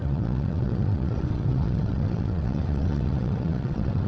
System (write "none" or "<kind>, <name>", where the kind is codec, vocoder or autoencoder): vocoder, WaveNeXt